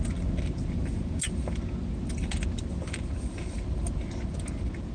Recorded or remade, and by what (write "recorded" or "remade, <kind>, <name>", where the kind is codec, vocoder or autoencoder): recorded